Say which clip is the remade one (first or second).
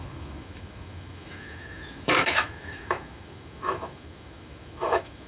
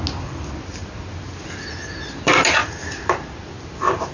first